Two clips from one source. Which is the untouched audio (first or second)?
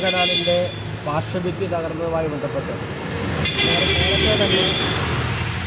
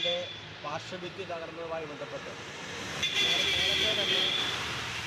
first